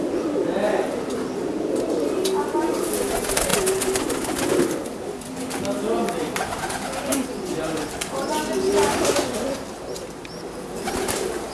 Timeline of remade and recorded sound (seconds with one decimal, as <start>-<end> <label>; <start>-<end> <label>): 0.0-11.5 recorded